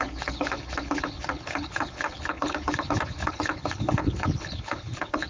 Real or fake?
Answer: fake